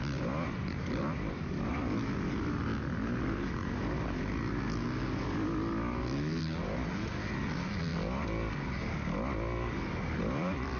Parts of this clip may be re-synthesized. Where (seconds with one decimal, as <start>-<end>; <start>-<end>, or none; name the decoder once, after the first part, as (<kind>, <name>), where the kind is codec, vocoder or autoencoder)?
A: 0.0-1.7 (vocoder, BigVGAN v2); 2.3-2.7; 6.4-7.9; 10.2-10.8